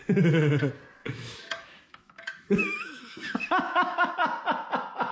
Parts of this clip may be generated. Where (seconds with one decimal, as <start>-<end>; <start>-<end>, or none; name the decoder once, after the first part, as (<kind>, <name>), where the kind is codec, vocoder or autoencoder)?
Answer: 1.0-4.1 (autoencoder, DAC-VAE)